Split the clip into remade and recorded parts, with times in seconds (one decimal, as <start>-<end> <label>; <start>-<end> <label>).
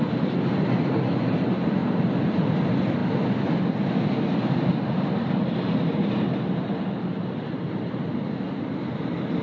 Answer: 0.0-9.4 recorded